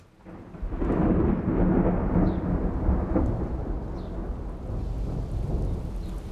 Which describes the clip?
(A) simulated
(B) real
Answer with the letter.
B